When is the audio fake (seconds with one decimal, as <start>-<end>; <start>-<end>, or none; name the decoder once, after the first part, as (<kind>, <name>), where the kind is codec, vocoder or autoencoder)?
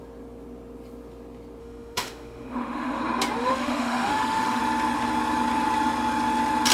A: 1.6-3.0 (autoencoder, DAC-VAE); 3.4-4.6